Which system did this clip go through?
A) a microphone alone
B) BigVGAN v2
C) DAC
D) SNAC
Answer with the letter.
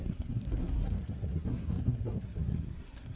D